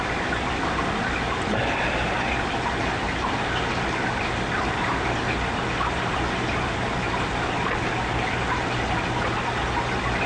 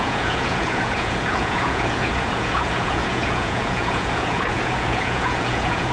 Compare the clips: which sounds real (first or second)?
first